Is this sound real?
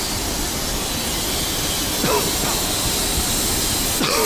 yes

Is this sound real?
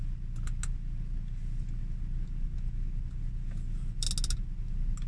yes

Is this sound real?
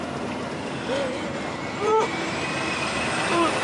no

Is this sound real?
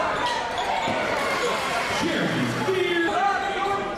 no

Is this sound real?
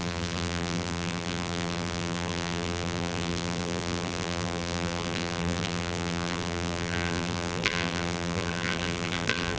no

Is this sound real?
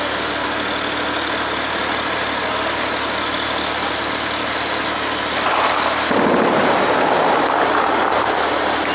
yes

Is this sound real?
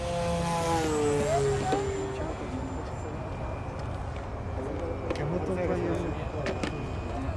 yes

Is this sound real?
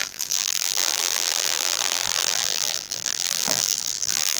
no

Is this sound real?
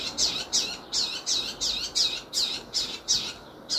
yes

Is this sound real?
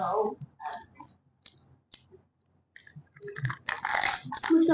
yes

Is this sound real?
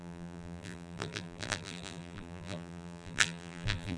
no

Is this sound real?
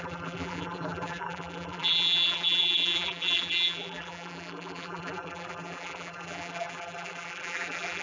no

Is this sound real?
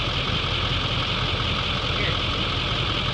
yes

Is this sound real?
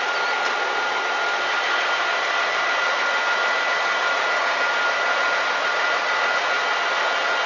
yes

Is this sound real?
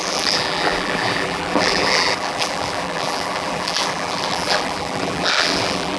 no